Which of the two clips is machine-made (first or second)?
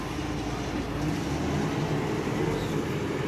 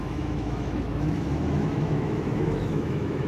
second